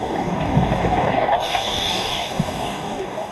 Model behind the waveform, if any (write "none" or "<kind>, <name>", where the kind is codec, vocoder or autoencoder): codec, DAC